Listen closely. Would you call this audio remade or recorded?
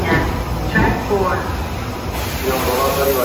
recorded